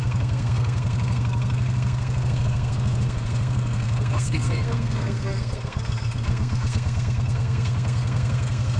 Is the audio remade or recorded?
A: remade